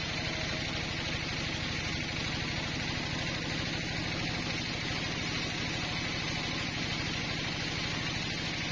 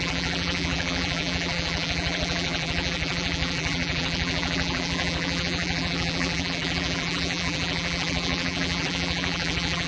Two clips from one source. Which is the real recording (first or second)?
first